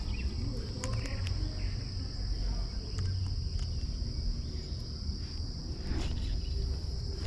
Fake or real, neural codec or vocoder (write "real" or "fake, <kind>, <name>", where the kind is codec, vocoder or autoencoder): real